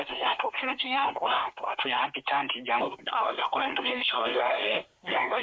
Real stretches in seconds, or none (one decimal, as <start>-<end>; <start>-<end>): 2.0-2.8